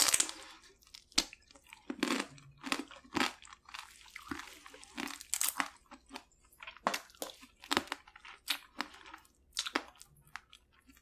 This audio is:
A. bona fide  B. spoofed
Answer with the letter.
A